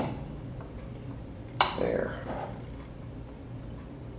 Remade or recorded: remade